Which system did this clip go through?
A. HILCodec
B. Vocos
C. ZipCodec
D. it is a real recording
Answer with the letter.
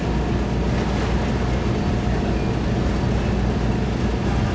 D